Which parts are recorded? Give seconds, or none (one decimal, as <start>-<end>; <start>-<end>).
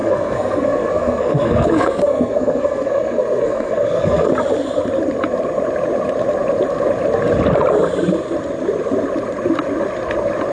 4.3-10.5